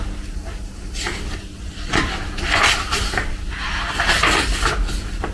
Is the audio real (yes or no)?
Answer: yes